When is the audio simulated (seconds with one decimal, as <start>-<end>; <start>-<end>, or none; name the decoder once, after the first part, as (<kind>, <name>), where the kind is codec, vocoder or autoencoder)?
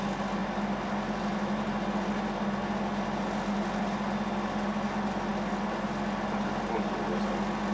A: none